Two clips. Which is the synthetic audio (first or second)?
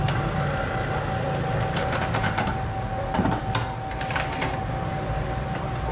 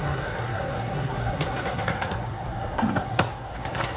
second